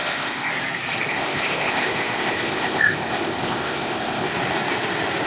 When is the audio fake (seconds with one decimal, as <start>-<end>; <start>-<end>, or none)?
0.0-0.5; 1.1-4.3